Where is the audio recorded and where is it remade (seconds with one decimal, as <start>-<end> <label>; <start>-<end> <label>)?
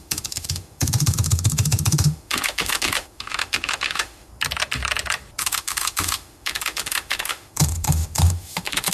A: 0.0-4.3 remade; 4.3-5.4 recorded; 5.4-8.9 remade